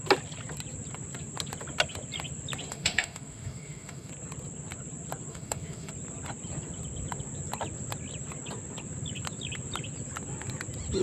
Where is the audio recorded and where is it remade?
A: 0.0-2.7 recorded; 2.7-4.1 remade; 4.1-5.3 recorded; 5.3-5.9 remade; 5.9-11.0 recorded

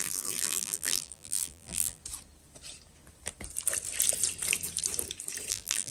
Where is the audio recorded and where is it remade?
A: 0.0-2.0 remade; 2.0-5.5 recorded; 5.5-5.9 remade

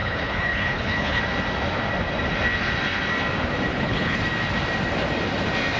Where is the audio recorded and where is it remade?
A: 0.0-1.2 remade; 1.2-3.7 recorded; 3.7-4.2 remade; 4.2-5.8 recorded

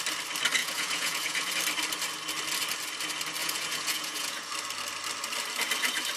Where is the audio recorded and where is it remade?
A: 0.0-0.6 recorded; 0.6-1.5 remade; 1.5-3.4 recorded; 3.4-4.5 remade; 4.5-6.2 recorded